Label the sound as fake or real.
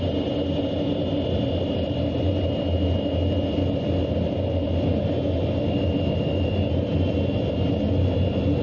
real